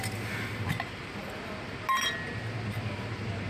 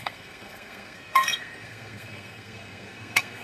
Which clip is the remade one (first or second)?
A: second